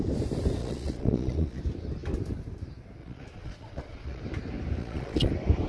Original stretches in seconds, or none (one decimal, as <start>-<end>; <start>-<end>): 0.0-0.6; 1.6-3.0; 4.2-4.8; 5.3-5.7